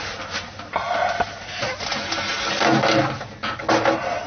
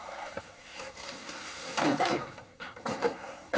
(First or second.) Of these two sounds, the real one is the first